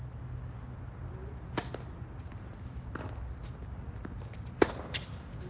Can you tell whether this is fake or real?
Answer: real